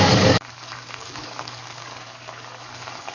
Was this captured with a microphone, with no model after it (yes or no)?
no